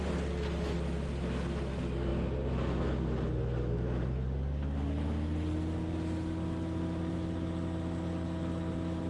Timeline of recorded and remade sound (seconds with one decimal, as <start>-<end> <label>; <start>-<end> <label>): 0.0-9.1 recorded